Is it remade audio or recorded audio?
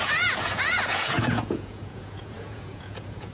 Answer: remade